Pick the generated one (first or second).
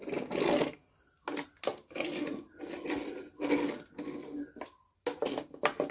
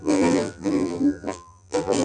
second